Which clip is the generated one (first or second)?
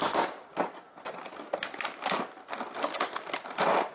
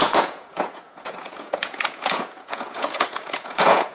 second